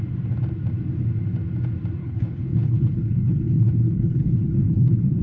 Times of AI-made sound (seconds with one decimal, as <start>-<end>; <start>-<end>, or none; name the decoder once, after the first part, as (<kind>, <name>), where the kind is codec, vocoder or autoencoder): 2.0-5.2 (codec, HILCodec)